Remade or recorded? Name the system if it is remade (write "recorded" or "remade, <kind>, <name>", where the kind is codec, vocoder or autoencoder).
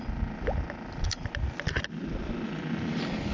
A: recorded